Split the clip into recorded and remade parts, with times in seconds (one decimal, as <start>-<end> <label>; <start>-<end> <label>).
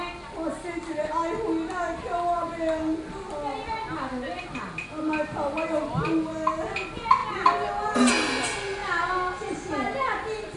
0.0-10.6 recorded